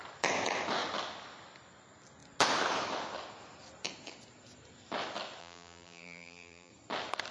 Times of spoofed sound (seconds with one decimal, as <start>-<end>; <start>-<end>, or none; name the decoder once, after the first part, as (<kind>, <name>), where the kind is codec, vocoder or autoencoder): 5.4-6.7 (vocoder, BigVGAN v2)